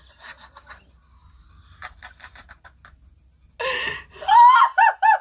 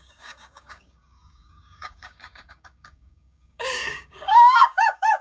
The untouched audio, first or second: first